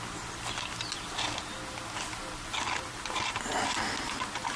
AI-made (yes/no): no